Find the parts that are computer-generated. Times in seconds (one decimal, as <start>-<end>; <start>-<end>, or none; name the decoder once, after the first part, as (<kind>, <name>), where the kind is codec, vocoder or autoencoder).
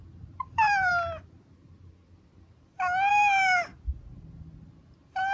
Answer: 0.0-0.9 (vocoder, BigVGAN v2); 3.1-3.7; 4.7-5.3